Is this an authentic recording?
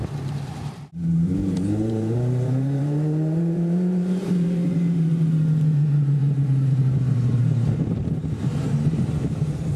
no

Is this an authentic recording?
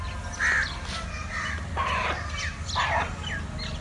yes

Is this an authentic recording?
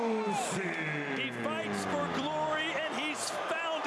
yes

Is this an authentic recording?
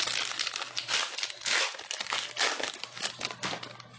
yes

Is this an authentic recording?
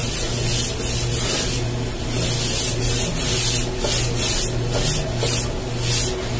yes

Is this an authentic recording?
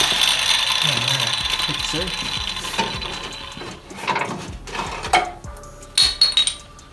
yes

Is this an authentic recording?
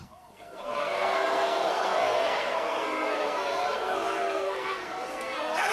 no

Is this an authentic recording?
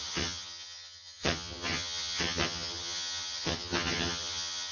no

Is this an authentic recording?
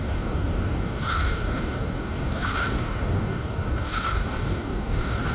no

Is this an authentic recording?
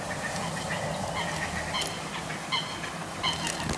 yes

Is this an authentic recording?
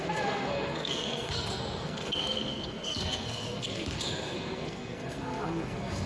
no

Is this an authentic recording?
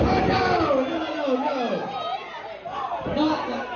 yes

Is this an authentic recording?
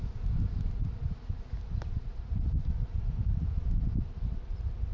yes